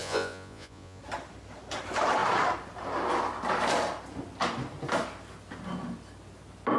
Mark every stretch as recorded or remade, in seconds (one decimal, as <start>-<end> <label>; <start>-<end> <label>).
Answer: 0.0-1.0 remade; 1.0-6.8 recorded